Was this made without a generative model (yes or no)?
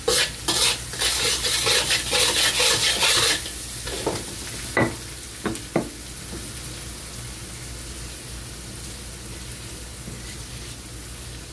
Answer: yes